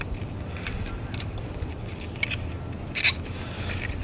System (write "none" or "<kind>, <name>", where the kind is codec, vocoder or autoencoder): none